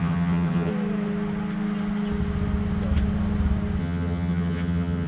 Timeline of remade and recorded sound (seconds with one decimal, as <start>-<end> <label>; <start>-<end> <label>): 0.0-0.7 remade; 0.7-3.8 recorded; 3.8-5.1 remade